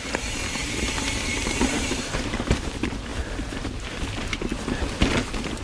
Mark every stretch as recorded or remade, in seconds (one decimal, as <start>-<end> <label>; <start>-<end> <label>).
0.0-0.6 recorded; 0.6-2.5 remade; 2.5-5.6 recorded